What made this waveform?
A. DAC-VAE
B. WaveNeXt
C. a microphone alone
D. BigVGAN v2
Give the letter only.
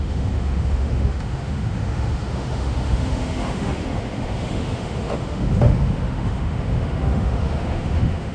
A